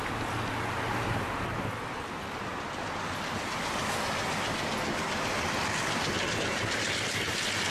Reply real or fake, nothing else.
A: real